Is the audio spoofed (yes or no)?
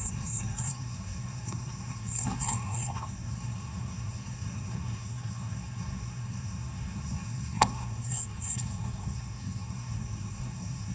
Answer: yes